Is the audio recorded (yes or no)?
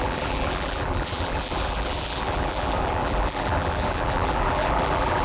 no